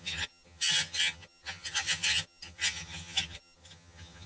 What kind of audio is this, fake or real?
fake